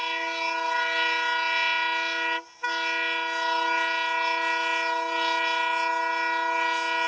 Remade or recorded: recorded